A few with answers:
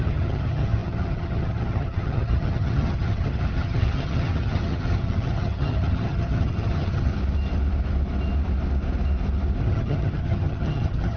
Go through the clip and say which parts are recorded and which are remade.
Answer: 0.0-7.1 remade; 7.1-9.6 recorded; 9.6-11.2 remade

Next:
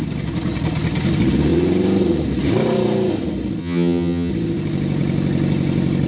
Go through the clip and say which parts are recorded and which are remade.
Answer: 0.0-3.6 recorded; 3.6-4.3 remade; 4.3-6.1 recorded